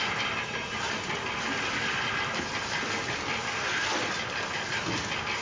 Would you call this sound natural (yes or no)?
yes